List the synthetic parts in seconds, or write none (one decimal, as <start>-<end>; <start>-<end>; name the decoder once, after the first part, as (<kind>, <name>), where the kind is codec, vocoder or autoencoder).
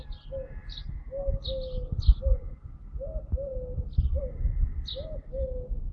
none